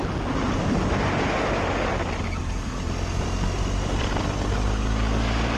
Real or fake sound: real